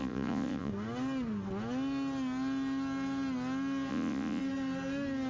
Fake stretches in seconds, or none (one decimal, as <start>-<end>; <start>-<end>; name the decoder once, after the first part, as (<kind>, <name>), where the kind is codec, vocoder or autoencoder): 0.0-0.7 (vocoder, Vocos); 3.9-4.4